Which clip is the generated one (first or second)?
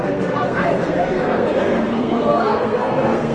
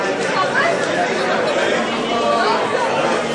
first